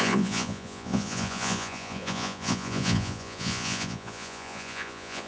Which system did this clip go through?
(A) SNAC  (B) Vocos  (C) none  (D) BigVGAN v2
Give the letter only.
B